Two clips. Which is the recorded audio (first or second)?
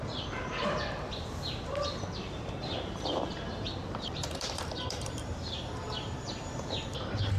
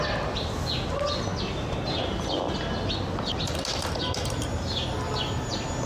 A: second